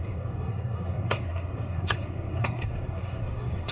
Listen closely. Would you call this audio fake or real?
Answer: fake